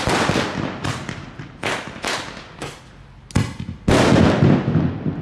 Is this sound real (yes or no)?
yes